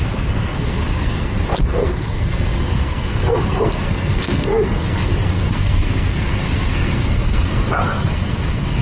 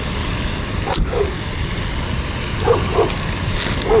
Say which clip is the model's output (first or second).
first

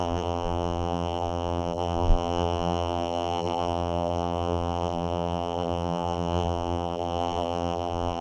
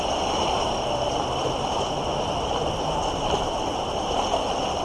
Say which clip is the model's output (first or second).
first